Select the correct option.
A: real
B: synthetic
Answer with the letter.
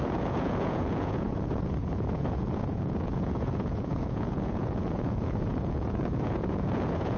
B